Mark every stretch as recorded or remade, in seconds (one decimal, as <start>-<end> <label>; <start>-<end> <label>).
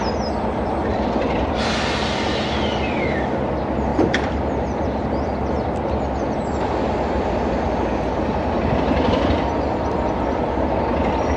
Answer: 0.0-0.8 recorded; 0.8-1.5 remade; 1.5-3.9 recorded; 3.9-5.0 remade; 5.0-11.4 recorded